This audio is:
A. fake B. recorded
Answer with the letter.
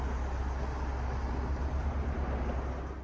B